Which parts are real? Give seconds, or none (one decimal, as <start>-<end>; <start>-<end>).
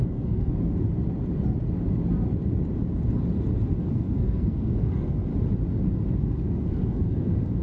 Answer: 0.5-3.8; 5.3-6.2